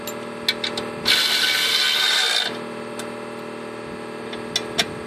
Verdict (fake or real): real